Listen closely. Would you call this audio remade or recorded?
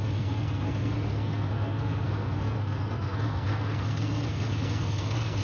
remade